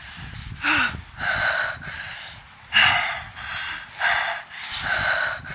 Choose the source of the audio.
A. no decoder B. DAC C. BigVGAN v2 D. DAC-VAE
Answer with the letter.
A